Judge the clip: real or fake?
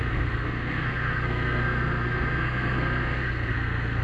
fake